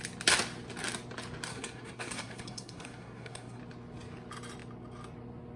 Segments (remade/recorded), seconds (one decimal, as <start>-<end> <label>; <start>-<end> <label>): 0.0-1.5 recorded; 1.5-3.6 remade; 3.6-5.6 recorded